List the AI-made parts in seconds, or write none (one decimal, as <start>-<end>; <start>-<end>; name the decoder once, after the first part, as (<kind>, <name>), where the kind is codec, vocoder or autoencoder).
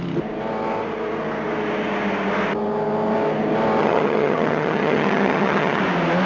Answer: 3.8-5.8 (vocoder, HiFi-GAN)